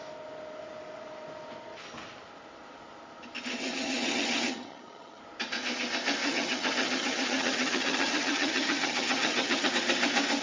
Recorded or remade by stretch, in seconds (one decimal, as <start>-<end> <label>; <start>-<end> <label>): 0.0-3.6 recorded; 3.6-5.2 remade; 5.2-6.2 recorded; 6.2-9.7 remade; 9.7-10.4 recorded